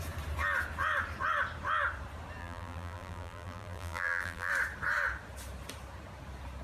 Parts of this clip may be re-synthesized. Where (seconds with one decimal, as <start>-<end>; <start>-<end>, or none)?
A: 2.4-4.5